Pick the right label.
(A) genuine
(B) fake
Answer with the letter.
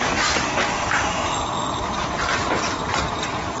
A